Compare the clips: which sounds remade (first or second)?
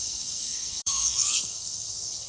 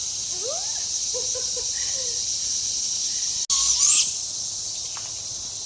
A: first